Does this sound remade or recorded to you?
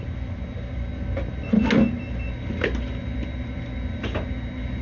recorded